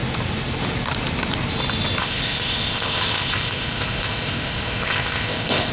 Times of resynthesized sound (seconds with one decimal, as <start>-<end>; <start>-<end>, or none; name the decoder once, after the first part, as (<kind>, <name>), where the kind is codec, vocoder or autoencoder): 2.0-5.7 (codec, ZipCodec)